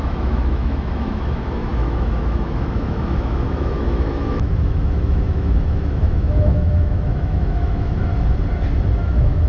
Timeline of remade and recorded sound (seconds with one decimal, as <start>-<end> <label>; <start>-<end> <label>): 0.0-8.1 remade; 8.1-9.0 recorded; 9.0-9.5 remade